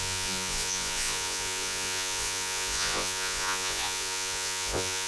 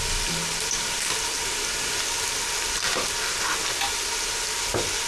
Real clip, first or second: second